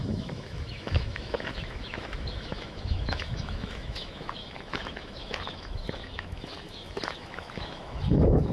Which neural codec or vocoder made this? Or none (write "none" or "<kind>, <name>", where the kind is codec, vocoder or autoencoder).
autoencoder, DAC-VAE